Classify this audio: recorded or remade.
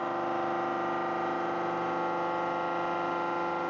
recorded